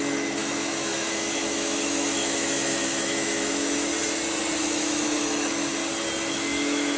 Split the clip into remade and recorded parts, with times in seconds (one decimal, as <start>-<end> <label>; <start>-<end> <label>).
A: 0.0-3.9 remade; 3.9-4.6 recorded; 4.6-5.8 remade; 5.8-6.3 recorded; 6.3-7.0 remade